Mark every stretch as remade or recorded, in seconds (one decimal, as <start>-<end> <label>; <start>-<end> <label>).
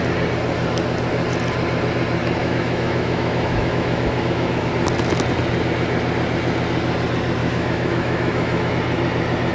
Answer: 0.0-2.4 recorded; 2.4-4.7 remade; 4.7-7.4 recorded; 7.4-8.7 remade; 8.7-9.5 recorded